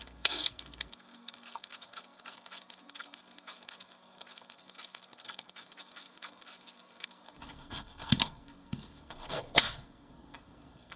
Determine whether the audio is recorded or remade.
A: remade